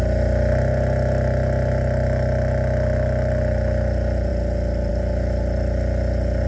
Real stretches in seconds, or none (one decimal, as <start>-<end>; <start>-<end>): 0.0-6.5